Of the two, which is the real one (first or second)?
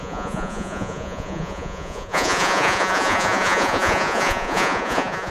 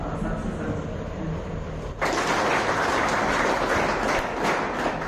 second